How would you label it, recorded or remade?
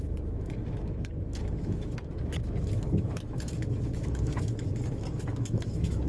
remade